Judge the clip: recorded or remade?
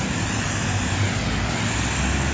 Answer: recorded